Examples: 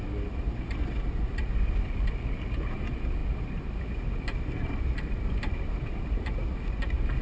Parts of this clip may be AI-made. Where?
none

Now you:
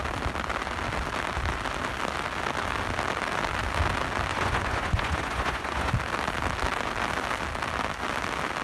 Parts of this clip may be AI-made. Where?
4.3-5.9 (vocoder, Vocos)